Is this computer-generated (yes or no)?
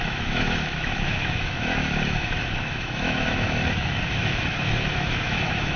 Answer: yes